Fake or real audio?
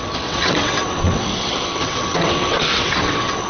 fake